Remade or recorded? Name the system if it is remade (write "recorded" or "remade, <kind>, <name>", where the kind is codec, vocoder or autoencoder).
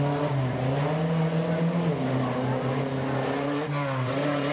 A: recorded